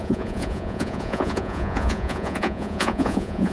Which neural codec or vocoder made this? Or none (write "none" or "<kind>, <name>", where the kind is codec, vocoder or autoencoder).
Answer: vocoder, Vocos